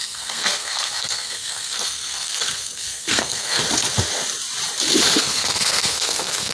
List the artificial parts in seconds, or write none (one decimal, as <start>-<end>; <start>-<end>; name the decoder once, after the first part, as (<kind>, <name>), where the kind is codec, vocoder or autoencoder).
0.0-3.6 (codec, SNAC); 5.2-6.5